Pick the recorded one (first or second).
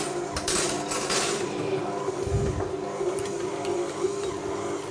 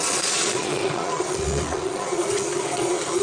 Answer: first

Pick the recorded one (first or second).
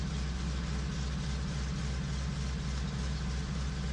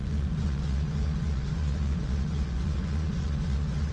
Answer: first